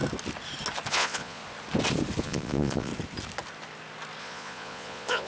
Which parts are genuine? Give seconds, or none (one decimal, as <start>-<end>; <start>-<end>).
0.0-0.9; 1.4-2.2; 2.9-4.2